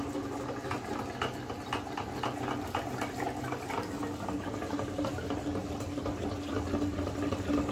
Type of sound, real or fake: real